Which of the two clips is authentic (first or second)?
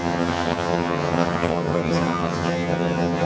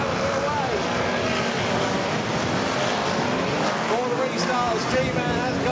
second